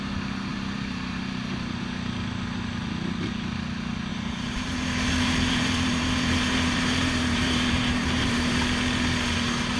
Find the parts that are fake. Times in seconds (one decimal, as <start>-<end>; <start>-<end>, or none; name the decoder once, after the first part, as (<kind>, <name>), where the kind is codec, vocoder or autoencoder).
0.5-1.8 (vocoder, BigVGAN v2); 4.1-8.6